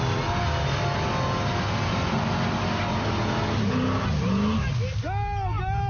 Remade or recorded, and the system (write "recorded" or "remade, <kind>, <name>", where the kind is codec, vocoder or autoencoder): recorded